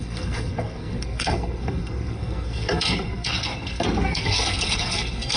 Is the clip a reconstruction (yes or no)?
yes